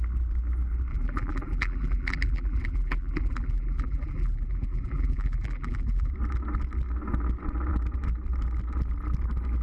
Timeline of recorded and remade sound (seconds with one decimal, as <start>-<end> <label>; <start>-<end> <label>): 0.0-0.9 recorded; 0.9-6.1 remade; 6.1-9.6 recorded